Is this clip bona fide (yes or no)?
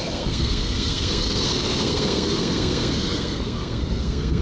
no